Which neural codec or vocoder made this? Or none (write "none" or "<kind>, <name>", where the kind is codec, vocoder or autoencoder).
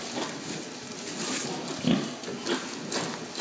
none